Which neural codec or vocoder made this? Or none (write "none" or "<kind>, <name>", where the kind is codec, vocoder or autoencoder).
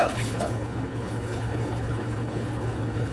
codec, HILCodec